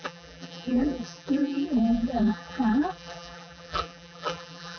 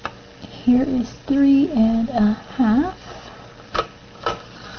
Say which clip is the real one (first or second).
second